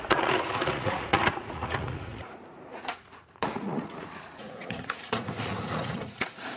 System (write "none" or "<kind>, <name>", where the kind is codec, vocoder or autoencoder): vocoder, Vocos